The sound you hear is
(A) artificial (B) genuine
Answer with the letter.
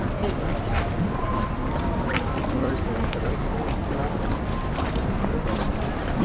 A